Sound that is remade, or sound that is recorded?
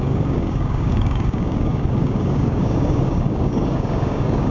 remade